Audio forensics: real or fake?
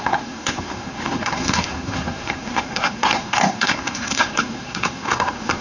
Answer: fake